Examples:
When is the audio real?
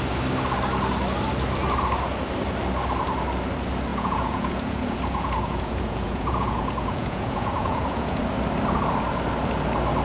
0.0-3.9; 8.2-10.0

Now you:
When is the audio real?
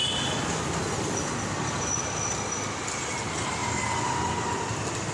0.0-3.1; 3.6-5.1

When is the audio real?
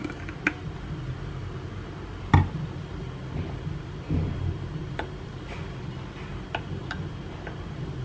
0.0-8.0